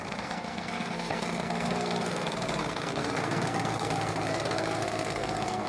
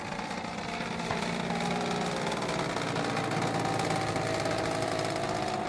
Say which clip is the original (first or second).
second